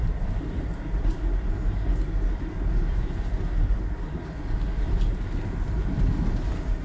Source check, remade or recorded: remade